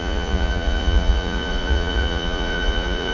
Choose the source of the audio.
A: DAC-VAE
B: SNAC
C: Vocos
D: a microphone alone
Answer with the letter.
C